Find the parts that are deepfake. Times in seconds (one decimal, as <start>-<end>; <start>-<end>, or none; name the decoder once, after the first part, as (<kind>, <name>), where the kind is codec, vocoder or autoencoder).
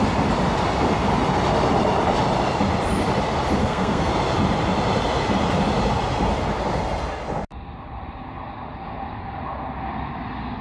3.6-4.1 (codec, SNAC)